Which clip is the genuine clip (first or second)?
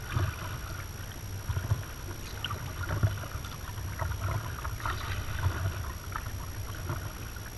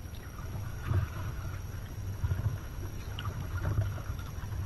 first